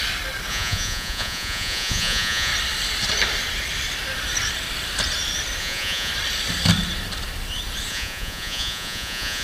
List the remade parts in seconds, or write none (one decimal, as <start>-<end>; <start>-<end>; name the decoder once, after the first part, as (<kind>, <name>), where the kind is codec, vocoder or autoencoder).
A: 0.5-2.5 (vocoder, Vocos); 5.6-6.1; 7.9-9.4